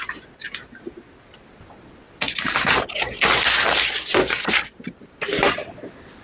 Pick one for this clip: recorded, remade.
recorded